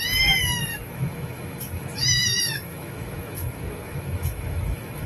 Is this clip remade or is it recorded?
remade